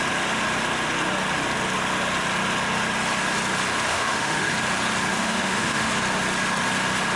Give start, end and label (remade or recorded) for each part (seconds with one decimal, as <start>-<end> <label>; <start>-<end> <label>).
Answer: 0.0-3.9 recorded; 3.9-4.5 remade; 4.5-5.1 recorded; 5.1-5.9 remade; 5.9-7.2 recorded